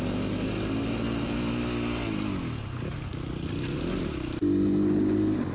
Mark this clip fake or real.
real